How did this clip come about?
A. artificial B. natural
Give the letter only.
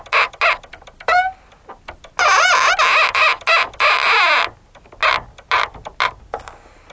B